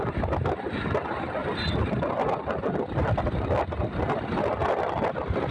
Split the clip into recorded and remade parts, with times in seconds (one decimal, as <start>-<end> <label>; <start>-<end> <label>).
0.0-5.5 recorded